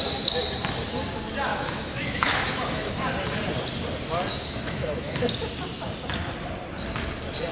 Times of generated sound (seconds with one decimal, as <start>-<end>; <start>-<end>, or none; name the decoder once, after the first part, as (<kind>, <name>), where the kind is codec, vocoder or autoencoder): 1.5-2.9 (autoencoder, DAC-VAE); 4.3-5.2